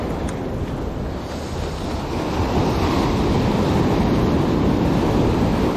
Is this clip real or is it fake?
real